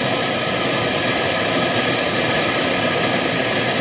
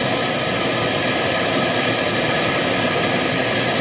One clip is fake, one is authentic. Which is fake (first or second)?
first